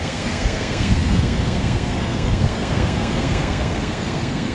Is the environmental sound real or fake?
fake